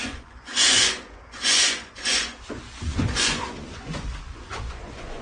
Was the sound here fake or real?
fake